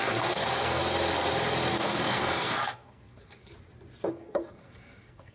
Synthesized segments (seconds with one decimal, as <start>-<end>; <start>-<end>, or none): 0.0-0.8; 1.7-3.5; 4.1-5.3